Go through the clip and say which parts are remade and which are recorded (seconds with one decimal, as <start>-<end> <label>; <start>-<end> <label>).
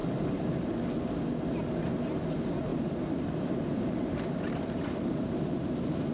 0.0-0.5 remade; 0.5-2.7 recorded; 2.7-6.1 remade